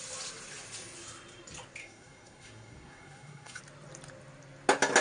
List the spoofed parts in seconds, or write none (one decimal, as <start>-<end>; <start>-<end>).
1.8-3.6

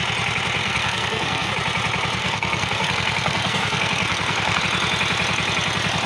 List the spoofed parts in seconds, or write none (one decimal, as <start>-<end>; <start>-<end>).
0.6-1.5; 2.2-4.6

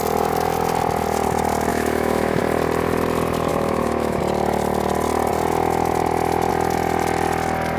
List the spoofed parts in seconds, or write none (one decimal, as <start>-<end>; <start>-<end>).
1.7-2.4; 3.5-4.2

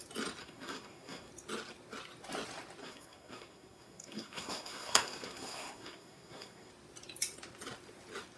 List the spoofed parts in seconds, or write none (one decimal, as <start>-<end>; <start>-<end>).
0.4-1.3; 2.8-6.7